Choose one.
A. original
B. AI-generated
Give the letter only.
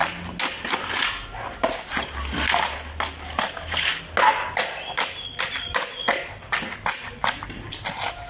A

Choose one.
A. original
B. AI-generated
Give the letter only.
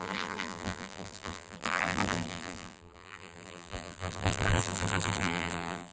B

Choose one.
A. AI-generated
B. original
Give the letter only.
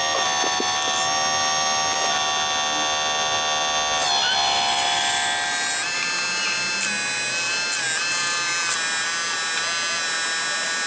B